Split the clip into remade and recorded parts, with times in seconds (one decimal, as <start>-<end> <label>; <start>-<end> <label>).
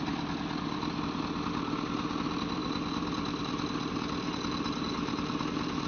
0.0-5.9 recorded